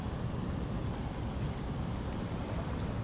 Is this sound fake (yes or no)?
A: no